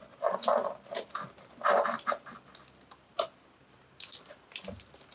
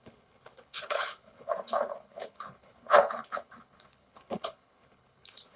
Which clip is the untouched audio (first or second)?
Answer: first